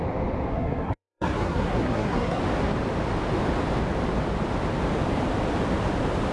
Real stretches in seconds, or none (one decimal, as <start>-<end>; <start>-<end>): 0.0-0.5; 2.4-6.3